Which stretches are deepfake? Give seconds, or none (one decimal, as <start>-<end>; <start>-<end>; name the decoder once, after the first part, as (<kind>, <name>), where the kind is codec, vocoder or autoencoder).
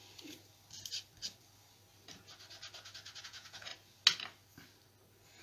3.2-3.7 (vocoder, Vocos)